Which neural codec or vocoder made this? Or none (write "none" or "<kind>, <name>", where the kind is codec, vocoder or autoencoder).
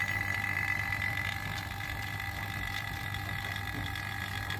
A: none